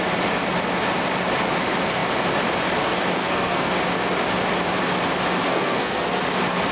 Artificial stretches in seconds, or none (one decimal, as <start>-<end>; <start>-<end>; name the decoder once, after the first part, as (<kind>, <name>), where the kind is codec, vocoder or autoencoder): 3.2-3.7 (codec, SNAC); 5.5-6.2